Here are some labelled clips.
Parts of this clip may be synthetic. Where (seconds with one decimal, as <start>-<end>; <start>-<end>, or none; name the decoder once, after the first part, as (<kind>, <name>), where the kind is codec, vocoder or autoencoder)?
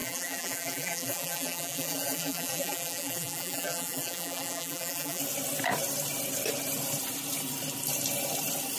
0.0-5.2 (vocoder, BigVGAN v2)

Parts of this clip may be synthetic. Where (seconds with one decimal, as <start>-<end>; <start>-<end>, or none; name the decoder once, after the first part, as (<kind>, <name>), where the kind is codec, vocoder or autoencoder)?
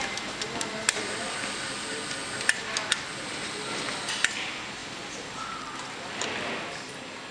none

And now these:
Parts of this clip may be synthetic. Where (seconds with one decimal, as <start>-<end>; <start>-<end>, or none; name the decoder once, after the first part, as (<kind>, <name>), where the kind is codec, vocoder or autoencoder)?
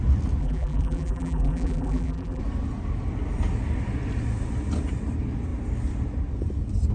0.4-2.4 (vocoder, BigVGAN v2)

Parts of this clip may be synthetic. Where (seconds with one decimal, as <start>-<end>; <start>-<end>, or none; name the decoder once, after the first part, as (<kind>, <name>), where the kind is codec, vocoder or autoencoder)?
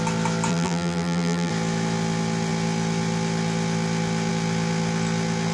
0.5-1.5 (vocoder, BigVGAN v2)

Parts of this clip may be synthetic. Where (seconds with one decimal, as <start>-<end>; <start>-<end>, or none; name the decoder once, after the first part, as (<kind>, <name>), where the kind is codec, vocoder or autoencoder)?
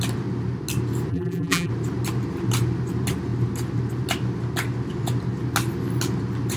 1.1-1.7 (vocoder, BigVGAN v2)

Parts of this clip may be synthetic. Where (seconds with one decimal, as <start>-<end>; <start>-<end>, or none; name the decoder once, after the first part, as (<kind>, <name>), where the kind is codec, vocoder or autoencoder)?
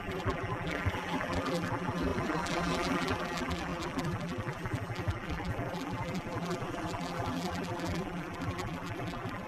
0.0-9.5 (vocoder, BigVGAN v2)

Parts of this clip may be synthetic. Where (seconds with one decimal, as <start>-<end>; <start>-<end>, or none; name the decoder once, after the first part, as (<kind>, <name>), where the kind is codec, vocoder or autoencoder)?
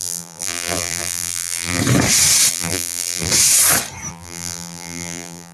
0.0-1.8 (vocoder, BigVGAN v2); 2.5-3.3; 4.1-5.5